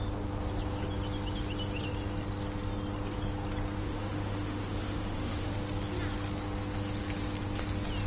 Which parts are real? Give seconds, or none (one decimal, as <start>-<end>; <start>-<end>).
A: 0.0-3.8; 5.5-8.1